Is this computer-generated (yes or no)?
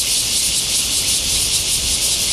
no